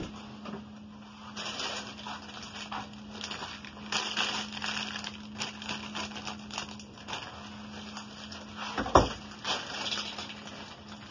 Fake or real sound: real